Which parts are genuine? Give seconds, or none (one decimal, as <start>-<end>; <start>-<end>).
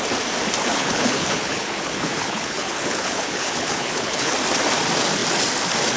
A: 0.0-0.7; 4.3-6.0